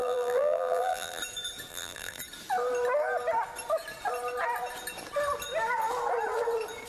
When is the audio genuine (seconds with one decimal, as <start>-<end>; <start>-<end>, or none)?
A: 1.2-1.7; 2.2-6.9